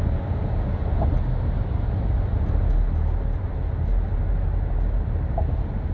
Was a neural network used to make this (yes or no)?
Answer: no